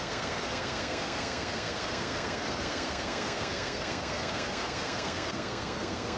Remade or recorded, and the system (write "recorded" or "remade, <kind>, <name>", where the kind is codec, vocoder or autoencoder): remade, codec, SNAC